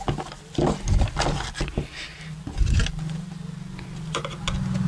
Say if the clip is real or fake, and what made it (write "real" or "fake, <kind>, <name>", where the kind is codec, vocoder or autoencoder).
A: real